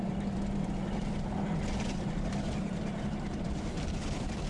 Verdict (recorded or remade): remade